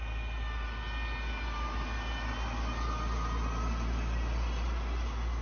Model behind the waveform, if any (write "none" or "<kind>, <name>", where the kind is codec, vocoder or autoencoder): none